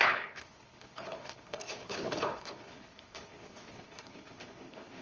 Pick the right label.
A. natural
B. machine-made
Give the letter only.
B